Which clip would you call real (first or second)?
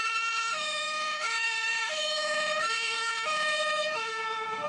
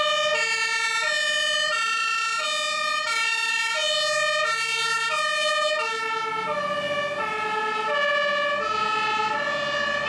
second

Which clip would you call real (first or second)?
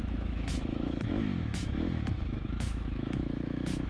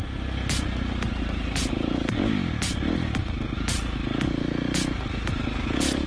second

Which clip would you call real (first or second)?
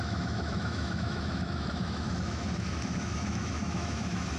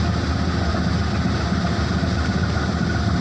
second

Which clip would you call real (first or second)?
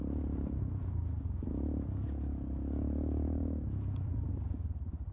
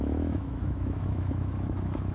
first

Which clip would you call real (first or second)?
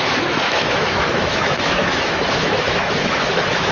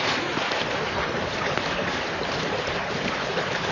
second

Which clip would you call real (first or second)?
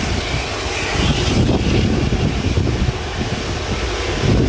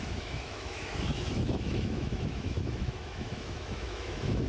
first